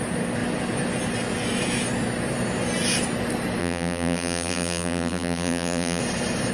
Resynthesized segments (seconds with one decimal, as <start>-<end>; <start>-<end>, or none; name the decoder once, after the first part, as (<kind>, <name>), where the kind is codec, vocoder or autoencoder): 3.6-6.0 (vocoder, BigVGAN v2)